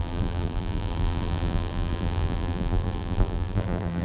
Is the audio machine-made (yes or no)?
yes